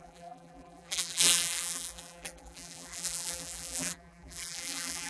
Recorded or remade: remade